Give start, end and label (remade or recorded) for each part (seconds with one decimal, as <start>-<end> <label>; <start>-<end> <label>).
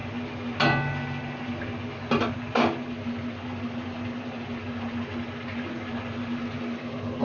0.0-7.2 recorded